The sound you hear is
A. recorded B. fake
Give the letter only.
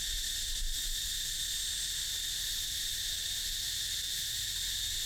A